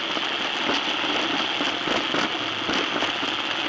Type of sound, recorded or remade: recorded